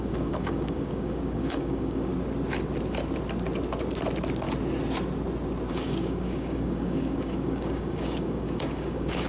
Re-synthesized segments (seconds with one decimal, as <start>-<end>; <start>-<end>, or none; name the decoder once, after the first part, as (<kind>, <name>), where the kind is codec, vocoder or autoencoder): 0.0-2.1 (codec, DAC); 5.7-9.3